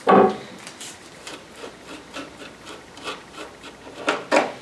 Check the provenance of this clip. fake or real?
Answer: real